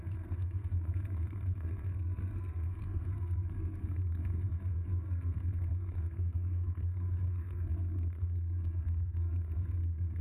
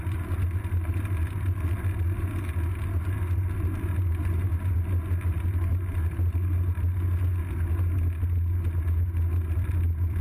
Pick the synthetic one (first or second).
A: first